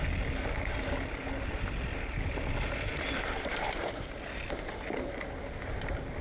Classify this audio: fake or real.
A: real